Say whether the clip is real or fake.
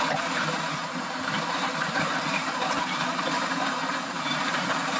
fake